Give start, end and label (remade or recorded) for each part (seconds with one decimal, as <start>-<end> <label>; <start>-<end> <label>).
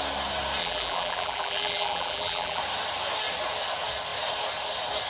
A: 0.0-0.6 recorded; 0.6-2.6 remade; 2.6-5.1 recorded